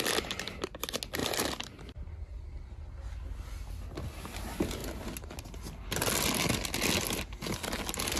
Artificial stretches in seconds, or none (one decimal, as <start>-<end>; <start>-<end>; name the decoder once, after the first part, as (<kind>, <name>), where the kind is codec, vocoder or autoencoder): none